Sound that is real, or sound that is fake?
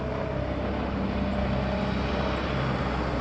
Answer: real